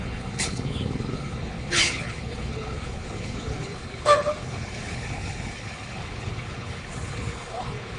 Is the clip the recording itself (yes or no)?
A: no